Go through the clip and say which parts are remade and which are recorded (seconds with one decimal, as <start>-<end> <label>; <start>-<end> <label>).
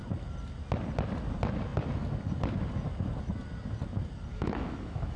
0.0-4.3 recorded; 4.3-5.2 remade